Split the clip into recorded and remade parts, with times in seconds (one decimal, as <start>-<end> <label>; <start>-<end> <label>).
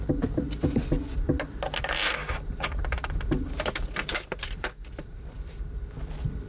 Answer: 0.0-2.2 recorded; 2.2-6.1 remade; 6.1-6.5 recorded